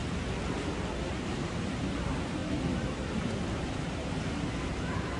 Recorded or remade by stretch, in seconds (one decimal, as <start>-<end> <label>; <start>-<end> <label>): 0.0-1.1 recorded; 1.1-2.4 remade; 2.4-3.5 recorded; 3.5-5.2 remade